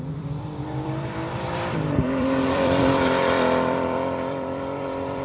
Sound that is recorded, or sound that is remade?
remade